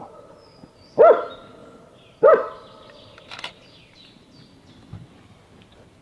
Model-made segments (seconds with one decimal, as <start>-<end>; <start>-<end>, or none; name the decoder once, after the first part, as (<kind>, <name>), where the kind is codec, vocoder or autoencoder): none